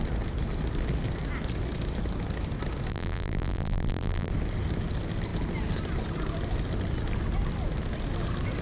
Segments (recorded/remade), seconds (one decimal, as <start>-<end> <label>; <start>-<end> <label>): 0.0-2.9 recorded; 2.9-4.3 remade; 4.3-8.6 recorded